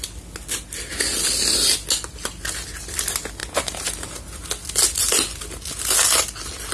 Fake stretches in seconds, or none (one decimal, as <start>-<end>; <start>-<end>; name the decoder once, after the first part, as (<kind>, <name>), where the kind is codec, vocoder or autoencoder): none